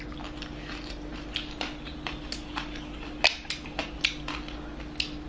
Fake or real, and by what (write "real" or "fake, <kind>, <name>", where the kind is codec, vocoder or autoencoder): real